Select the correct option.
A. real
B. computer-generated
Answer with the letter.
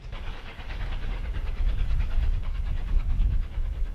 B